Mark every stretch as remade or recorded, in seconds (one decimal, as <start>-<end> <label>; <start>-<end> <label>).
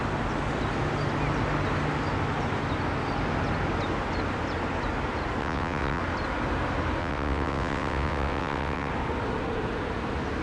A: 0.0-5.4 recorded; 5.4-6.0 remade; 6.0-7.0 recorded; 7.0-8.9 remade; 8.9-10.4 recorded